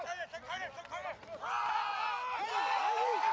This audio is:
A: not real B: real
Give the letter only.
B